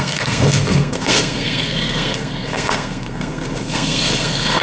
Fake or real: fake